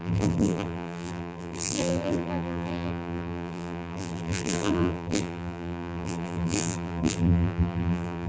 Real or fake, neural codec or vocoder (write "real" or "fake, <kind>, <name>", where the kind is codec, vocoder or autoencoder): fake, vocoder, BigVGAN v2